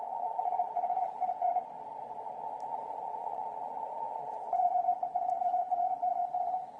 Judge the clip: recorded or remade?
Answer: remade